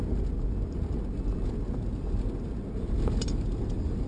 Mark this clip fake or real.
real